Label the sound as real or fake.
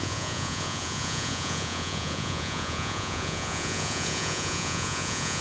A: fake